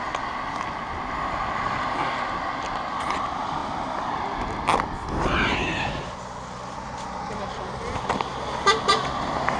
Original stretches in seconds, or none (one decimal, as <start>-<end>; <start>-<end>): 0.0-9.6